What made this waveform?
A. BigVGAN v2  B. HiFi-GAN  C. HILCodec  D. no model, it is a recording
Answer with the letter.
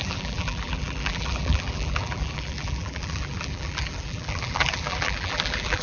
A